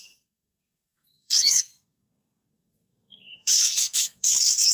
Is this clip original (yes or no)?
no